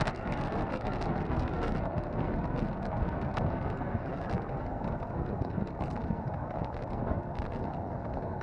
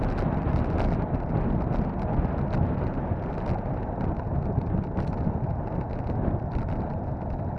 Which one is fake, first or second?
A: first